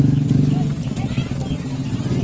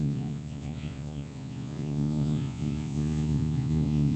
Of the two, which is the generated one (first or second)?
second